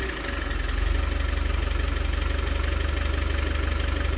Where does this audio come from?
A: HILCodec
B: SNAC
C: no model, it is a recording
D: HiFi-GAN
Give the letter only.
C